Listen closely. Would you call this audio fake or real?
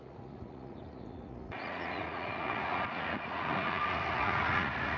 fake